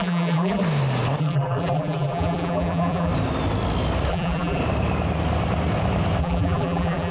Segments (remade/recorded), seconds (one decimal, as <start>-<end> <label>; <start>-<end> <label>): 0.0-0.6 remade; 0.6-1.2 recorded; 1.2-3.1 remade; 3.1-4.1 recorded; 4.1-4.6 remade; 4.6-6.2 recorded; 6.2-7.1 remade